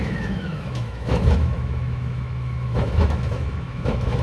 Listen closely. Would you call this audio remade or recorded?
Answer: remade